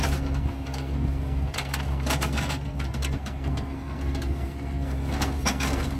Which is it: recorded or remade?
remade